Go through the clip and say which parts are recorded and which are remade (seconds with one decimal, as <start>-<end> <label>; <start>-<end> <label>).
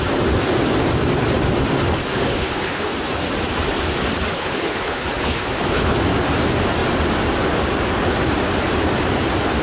0.0-2.1 recorded; 2.1-2.9 remade; 2.9-4.3 recorded; 4.3-6.0 remade; 6.0-9.6 recorded